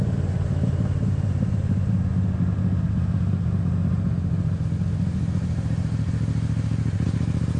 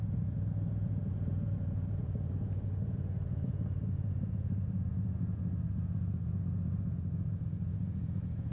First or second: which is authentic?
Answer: first